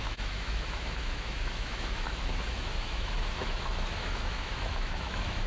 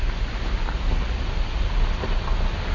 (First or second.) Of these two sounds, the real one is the second